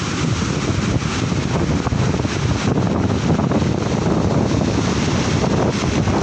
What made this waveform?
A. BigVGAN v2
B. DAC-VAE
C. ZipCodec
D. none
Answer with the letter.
D